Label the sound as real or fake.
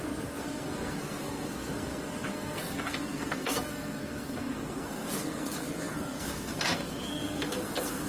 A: fake